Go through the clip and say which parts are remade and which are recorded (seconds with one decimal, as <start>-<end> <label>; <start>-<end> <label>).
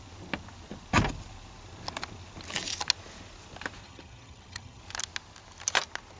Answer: 0.0-3.8 recorded; 3.8-4.8 remade; 4.8-6.2 recorded